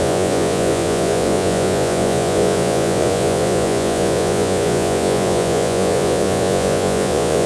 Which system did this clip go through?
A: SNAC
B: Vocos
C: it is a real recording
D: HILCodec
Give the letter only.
B